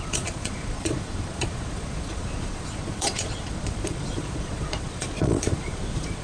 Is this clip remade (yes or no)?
yes